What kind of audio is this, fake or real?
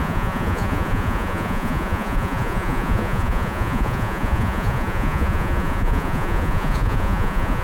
fake